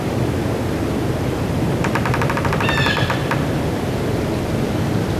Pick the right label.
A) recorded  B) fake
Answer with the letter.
B